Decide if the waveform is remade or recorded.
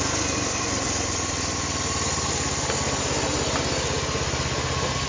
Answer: recorded